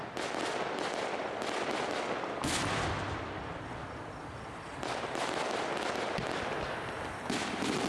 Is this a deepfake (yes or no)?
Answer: no